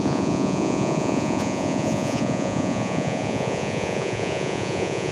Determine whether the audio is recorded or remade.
remade